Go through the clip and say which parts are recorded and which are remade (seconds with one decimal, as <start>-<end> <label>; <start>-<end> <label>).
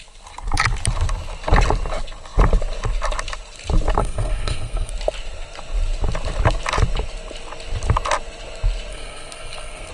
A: 0.0-4.0 recorded; 4.0-4.9 remade; 4.9-8.9 recorded; 8.9-9.9 remade